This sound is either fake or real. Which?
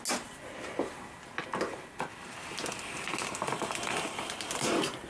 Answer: real